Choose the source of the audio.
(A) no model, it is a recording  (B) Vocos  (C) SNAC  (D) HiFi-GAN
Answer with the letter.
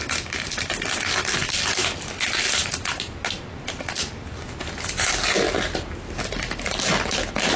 A